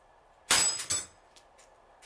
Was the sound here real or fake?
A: real